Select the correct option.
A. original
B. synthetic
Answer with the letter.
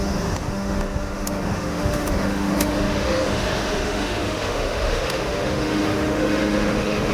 B